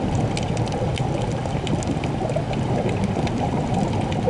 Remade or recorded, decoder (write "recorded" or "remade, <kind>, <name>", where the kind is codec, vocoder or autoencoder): recorded